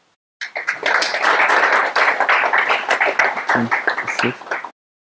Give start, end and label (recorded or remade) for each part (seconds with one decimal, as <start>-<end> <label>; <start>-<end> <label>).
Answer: 0.0-5.1 recorded